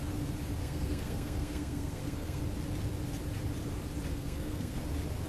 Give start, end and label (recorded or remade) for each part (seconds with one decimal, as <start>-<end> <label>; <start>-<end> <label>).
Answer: 0.0-0.6 recorded; 0.6-2.4 remade; 2.4-4.1 recorded; 4.1-4.8 remade; 4.8-5.3 recorded